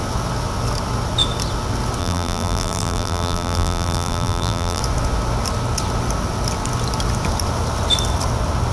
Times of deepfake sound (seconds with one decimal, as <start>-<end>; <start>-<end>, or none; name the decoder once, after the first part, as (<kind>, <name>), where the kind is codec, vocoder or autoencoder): 2.0-4.8 (vocoder, BigVGAN v2)